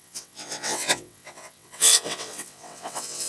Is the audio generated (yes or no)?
yes